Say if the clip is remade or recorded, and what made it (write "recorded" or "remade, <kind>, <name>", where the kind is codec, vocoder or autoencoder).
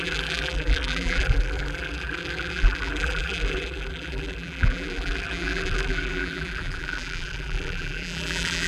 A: remade, vocoder, BigVGAN v2